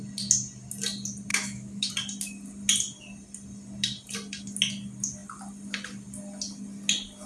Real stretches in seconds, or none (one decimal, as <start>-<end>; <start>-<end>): 0.0-1.3; 1.9-7.3